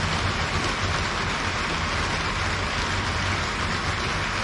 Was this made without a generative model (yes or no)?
yes